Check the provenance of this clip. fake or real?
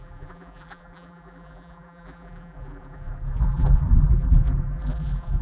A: fake